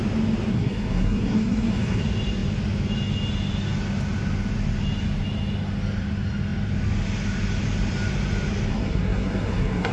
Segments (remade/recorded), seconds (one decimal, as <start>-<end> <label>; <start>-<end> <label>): 0.0-0.5 recorded; 0.5-2.0 remade; 2.0-8.7 recorded; 8.7-9.9 remade